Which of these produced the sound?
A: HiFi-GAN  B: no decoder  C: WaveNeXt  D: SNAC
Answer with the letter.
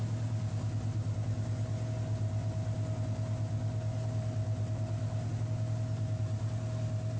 B